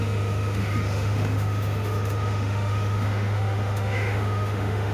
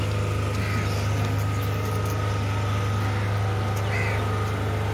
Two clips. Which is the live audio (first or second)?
second